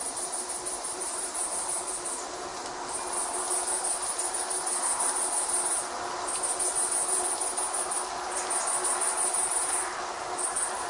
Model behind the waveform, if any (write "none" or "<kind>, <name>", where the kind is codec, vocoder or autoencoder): none